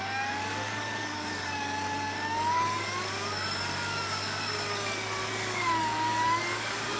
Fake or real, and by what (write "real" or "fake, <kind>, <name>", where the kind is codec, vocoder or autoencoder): fake, codec, DAC